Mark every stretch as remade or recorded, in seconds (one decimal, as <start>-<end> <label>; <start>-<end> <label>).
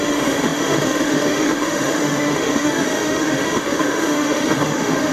0.0-5.1 remade